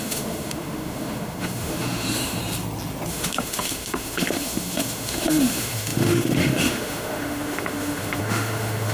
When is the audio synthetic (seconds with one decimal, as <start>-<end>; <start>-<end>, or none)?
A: 0.0-2.4; 3.1-8.9